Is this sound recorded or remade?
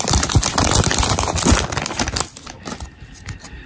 recorded